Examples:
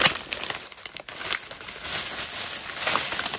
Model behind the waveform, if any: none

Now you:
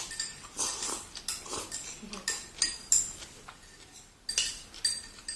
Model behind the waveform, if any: none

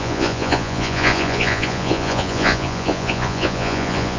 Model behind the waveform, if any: vocoder, Vocos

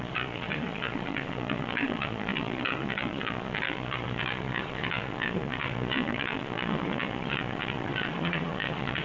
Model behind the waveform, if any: vocoder, Vocos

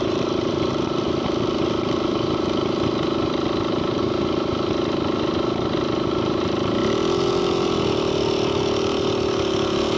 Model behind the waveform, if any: none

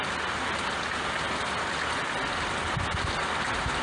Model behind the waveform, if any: none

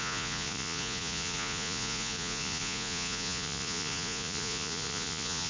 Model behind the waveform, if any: vocoder, Vocos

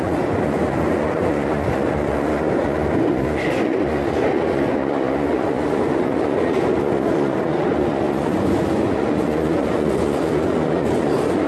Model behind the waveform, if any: vocoder, Vocos